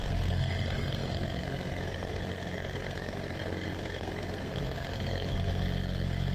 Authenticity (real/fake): fake